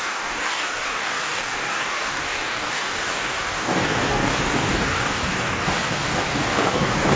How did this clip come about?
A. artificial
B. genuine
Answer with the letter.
A